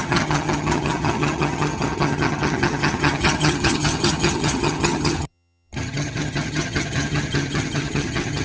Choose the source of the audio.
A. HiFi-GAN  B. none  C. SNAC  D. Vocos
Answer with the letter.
A